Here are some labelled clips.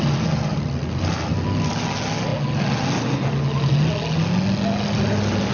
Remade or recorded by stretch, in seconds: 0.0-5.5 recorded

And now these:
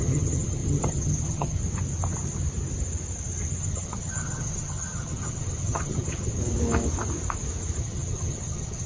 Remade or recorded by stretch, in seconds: 0.0-1.6 remade; 1.6-3.6 recorded; 3.6-6.4 remade; 6.4-7.8 recorded; 7.8-8.9 remade